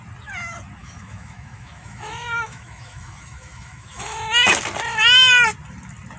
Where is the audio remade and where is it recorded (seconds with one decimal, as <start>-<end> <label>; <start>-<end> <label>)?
0.0-0.8 recorded; 0.8-4.5 remade; 4.5-6.2 recorded